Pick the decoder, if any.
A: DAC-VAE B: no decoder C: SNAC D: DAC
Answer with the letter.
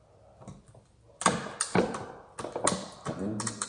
B